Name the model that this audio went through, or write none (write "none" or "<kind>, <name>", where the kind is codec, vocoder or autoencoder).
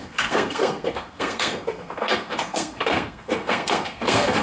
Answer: codec, SNAC